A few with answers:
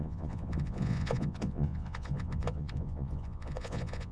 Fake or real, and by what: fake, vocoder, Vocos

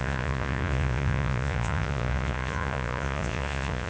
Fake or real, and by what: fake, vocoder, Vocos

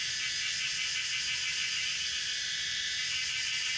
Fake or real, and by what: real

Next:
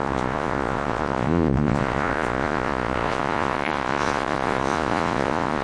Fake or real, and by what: fake, vocoder, Vocos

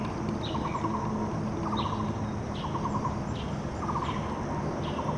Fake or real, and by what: real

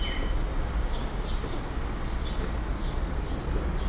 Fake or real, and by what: real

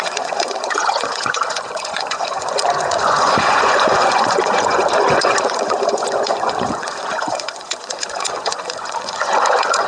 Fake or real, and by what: fake, vocoder, Vocos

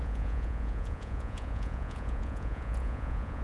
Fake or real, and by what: fake, vocoder, Vocos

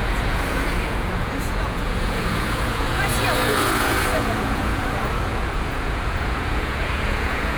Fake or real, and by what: fake, vocoder, Vocos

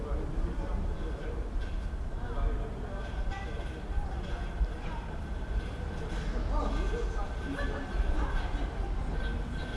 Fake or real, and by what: real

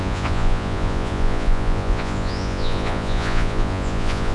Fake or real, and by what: fake, vocoder, Vocos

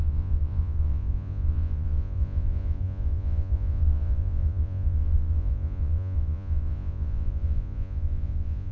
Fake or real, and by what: fake, vocoder, Vocos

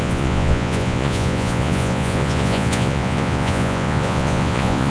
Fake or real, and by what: fake, vocoder, Vocos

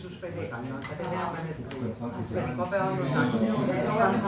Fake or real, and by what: real